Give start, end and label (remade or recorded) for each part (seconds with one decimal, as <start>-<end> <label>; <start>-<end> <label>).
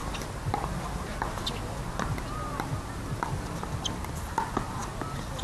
0.0-5.4 recorded